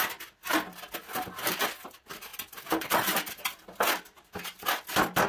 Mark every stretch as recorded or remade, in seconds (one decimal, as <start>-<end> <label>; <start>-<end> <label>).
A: 0.0-2.3 recorded; 2.3-3.3 remade; 3.3-5.3 recorded